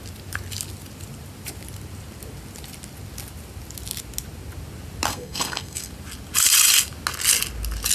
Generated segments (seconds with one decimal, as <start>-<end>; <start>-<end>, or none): 5.1-5.9